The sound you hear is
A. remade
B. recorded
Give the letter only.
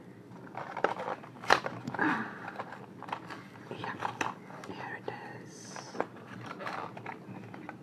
B